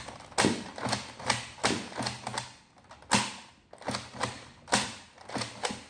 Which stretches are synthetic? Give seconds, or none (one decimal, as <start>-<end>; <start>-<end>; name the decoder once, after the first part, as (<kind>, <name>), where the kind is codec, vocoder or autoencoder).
none